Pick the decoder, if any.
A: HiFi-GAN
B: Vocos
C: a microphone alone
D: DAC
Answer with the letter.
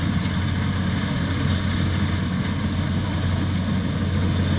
C